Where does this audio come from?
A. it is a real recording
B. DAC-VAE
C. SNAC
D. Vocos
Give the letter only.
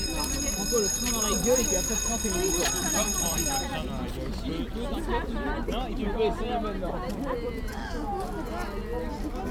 A